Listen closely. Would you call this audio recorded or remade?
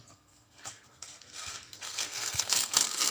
remade